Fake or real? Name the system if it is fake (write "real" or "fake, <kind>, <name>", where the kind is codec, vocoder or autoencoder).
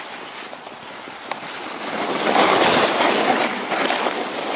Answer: real